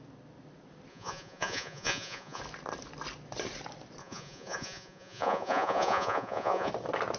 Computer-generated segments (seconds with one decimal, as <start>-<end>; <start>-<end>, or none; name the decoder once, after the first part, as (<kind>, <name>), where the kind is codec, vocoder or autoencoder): 0.9-2.4 (vocoder, Vocos); 4.0-6.7